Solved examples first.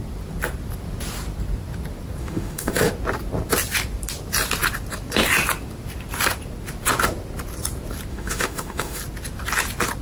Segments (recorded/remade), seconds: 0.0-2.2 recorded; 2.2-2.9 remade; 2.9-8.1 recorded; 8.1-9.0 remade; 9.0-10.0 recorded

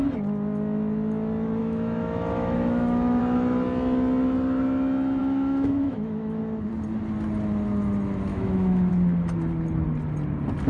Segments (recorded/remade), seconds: 0.0-1.6 recorded; 1.6-3.2 remade; 3.2-5.2 recorded; 5.2-6.4 remade; 6.4-8.3 recorded; 8.3-8.9 remade; 8.9-10.7 recorded

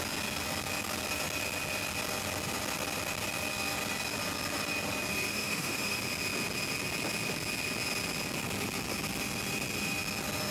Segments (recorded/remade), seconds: 0.0-5.3 recorded; 5.3-6.0 remade; 6.0-10.5 recorded